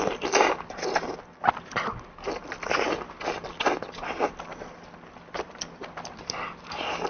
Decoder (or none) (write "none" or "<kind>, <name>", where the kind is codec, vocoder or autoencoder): none